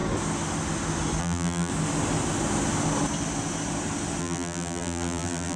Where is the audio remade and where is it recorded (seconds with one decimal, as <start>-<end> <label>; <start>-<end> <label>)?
0.0-1.2 recorded; 1.2-1.7 remade; 1.7-4.2 recorded; 4.2-5.6 remade